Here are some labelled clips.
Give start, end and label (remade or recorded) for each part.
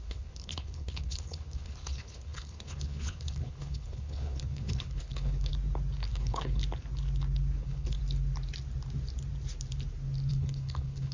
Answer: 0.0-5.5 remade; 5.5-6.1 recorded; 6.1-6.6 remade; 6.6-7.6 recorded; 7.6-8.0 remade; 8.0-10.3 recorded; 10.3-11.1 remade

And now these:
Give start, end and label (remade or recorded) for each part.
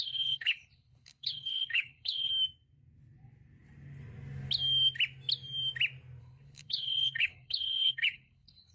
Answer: 0.0-2.3 remade; 2.3-6.2 recorded; 6.2-8.7 remade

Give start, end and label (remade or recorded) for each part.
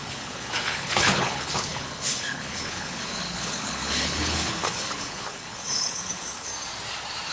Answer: 0.0-6.5 remade; 6.5-7.3 recorded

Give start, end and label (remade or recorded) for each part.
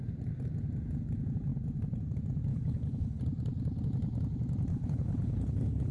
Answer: 0.0-2.5 recorded; 2.5-3.2 remade; 3.2-4.7 recorded; 4.7-5.9 remade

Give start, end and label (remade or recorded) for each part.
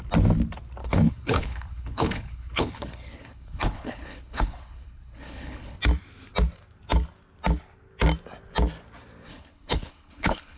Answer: 0.0-0.8 recorded; 0.8-5.8 remade; 5.8-9.3 recorded; 9.3-10.6 remade